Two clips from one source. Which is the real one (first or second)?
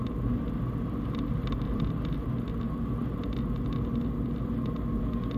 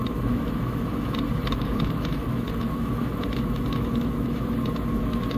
first